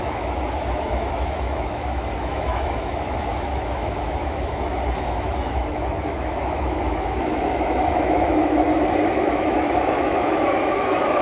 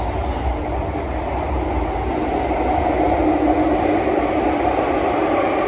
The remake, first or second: first